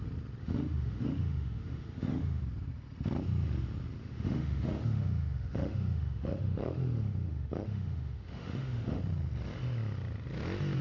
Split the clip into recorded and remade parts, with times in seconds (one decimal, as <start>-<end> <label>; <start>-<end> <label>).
0.0-0.4 recorded; 0.4-2.4 remade; 2.4-4.0 recorded; 4.0-9.0 remade; 9.0-10.8 recorded